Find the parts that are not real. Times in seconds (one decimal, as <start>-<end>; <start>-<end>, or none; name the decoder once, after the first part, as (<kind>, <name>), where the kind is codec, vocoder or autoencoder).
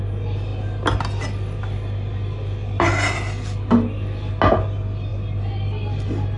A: none